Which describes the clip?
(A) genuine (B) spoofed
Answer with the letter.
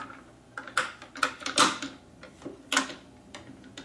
A